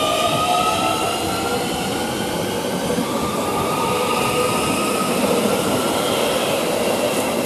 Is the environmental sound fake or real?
fake